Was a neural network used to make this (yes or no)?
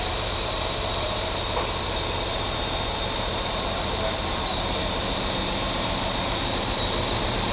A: yes